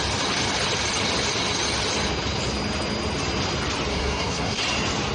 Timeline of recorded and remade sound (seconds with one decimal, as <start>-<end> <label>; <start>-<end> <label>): 0.0-3.9 recorded; 3.9-4.6 remade; 4.6-5.1 recorded